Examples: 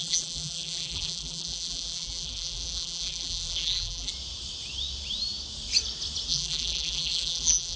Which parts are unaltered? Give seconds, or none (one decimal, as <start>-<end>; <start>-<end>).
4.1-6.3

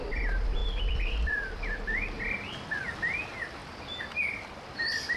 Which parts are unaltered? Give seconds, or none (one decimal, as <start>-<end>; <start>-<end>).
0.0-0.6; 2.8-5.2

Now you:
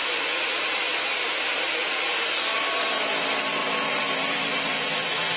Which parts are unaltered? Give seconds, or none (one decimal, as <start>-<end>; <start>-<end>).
none